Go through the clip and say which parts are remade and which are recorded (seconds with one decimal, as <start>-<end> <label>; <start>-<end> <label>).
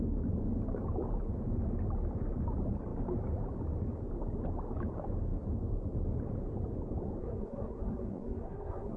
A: 0.0-7.2 recorded; 7.2-9.0 remade